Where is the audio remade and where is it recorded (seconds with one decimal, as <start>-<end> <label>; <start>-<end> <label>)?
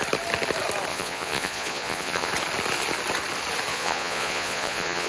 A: 0.0-0.9 recorded; 0.9-2.3 remade; 2.3-3.7 recorded; 3.7-5.1 remade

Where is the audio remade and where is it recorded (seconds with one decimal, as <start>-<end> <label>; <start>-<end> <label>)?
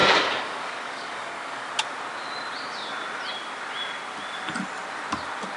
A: 0.0-1.7 remade; 1.7-5.6 recorded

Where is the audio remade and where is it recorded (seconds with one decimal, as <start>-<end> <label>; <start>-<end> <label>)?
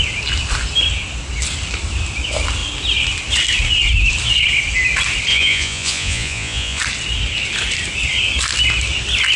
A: 0.0-5.3 recorded; 5.3-6.8 remade; 6.8-9.4 recorded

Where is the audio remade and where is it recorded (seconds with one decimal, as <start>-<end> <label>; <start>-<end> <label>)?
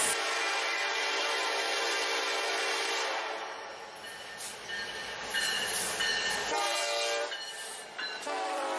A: 0.0-8.8 recorded